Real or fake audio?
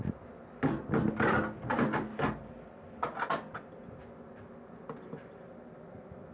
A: real